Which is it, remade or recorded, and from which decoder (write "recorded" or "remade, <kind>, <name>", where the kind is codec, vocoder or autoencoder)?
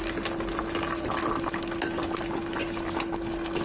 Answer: recorded